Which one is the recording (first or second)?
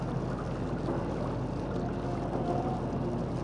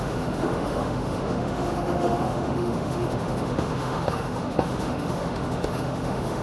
first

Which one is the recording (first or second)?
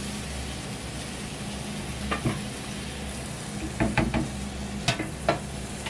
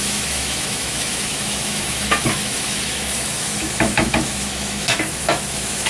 first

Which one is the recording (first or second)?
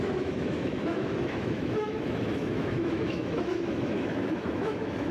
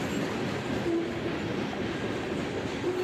second